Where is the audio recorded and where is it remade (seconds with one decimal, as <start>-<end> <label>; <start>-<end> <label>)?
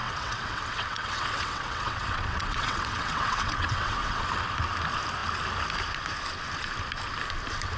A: 0.0-4.2 remade; 4.2-7.8 recorded